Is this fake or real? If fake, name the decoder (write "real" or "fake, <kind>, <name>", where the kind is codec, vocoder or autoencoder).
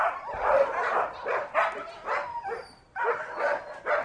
real